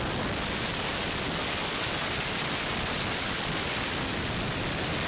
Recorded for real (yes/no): yes